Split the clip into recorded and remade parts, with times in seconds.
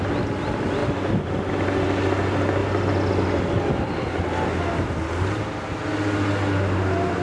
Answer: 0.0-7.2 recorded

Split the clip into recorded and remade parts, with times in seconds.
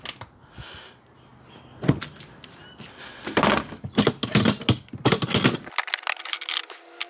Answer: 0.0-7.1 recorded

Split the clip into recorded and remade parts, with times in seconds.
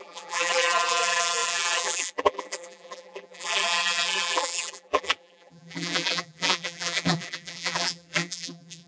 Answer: 0.0-8.9 remade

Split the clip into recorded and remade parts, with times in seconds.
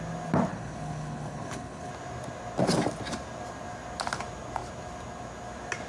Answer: 0.0-0.5 recorded; 0.5-1.9 remade; 1.9-5.9 recorded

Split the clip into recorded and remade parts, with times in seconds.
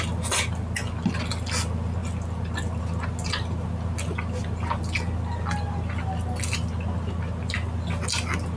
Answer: 0.0-8.6 recorded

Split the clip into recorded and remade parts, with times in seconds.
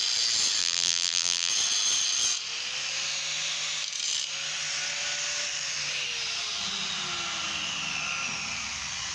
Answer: 0.0-0.6 recorded; 0.6-1.5 remade; 1.5-9.1 recorded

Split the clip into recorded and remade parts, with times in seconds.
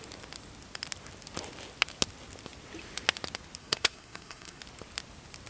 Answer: 0.0-3.6 recorded; 3.6-4.6 remade; 4.6-5.5 recorded